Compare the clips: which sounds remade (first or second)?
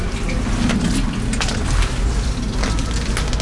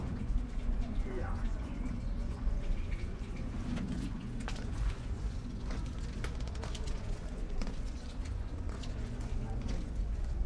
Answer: second